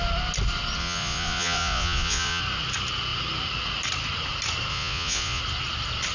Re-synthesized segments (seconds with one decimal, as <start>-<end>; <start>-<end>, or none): 0.8-2.4; 4.7-5.4